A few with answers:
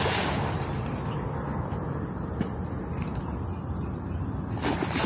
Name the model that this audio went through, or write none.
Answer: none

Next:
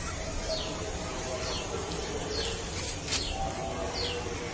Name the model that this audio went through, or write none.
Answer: none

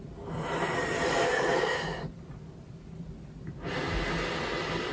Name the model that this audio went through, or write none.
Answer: none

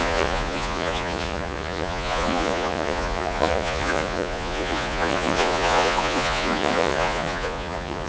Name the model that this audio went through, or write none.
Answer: vocoder, Vocos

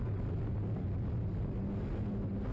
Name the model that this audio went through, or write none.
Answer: none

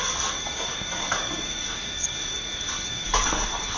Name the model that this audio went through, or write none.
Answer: codec, DAC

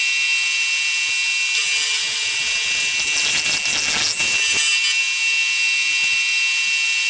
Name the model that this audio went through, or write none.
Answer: none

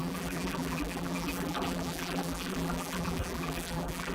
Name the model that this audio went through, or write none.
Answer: vocoder, BigVGAN v2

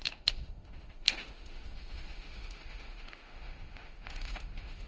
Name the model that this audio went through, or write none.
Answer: autoencoder, DAC-VAE